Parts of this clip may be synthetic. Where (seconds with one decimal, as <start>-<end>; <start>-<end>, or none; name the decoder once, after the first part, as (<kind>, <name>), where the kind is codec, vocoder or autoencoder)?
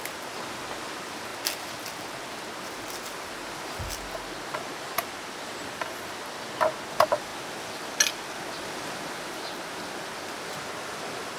none